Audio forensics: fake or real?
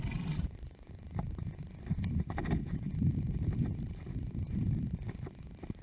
fake